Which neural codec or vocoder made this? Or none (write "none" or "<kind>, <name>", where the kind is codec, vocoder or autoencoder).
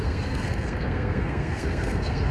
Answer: codec, SNAC